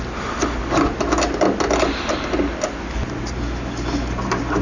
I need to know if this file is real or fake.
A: real